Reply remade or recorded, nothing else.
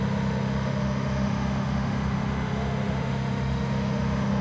remade